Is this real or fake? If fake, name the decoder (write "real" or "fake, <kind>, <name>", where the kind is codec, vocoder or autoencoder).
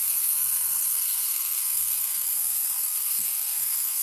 fake, codec, SNAC